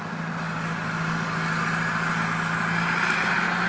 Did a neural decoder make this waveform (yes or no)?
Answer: no